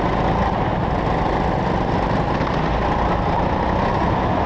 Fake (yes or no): no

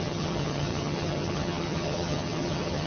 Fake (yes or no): yes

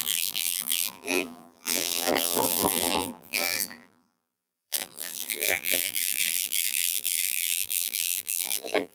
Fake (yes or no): yes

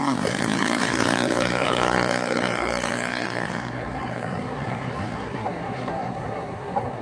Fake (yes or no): yes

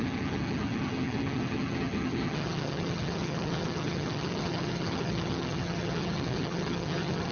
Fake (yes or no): yes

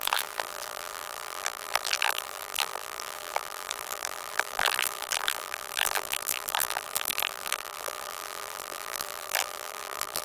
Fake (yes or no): yes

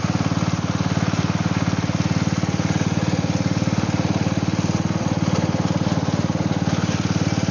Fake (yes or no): no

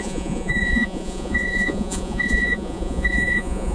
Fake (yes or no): yes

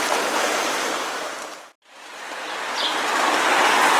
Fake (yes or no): no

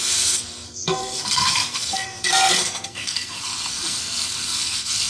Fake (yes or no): yes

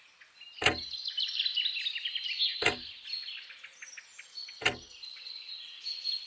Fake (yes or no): no